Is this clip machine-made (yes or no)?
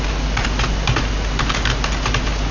no